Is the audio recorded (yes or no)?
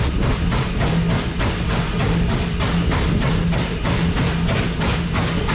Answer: yes